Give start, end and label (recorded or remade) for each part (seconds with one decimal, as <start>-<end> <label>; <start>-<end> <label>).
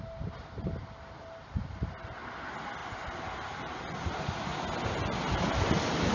0.0-6.1 recorded